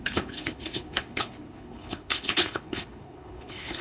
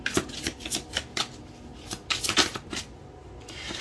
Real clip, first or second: second